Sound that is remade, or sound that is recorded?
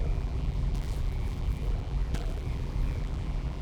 remade